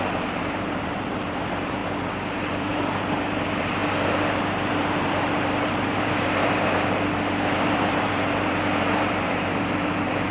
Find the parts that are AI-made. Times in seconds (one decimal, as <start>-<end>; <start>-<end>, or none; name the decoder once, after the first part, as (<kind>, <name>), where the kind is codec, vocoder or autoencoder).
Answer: 0.0-1.8 (vocoder, BigVGAN v2); 2.3-10.3